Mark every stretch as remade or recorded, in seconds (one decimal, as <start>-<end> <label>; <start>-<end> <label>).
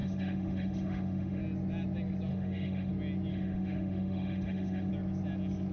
0.0-1.4 remade; 1.4-2.3 recorded; 2.3-2.9 remade; 2.9-3.3 recorded; 3.3-4.9 remade; 4.9-5.7 recorded